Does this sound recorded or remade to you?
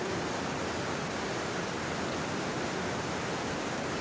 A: recorded